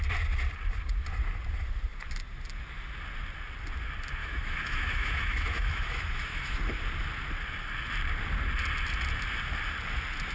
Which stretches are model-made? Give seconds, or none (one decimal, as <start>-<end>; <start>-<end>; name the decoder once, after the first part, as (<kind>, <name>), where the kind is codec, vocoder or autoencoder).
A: 4.2-6.6 (autoencoder, DAC-VAE)